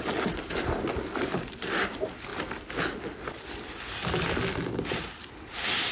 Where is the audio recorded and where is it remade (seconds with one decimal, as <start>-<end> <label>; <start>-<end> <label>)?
0.0-5.9 recorded